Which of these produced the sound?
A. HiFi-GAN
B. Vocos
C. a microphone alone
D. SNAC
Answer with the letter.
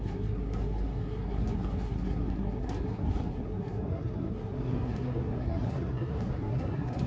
D